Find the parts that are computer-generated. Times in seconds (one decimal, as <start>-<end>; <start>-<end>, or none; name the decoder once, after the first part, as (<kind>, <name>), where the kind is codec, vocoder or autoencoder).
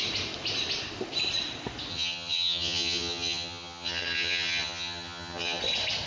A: 1.9-5.6 (vocoder, HiFi-GAN)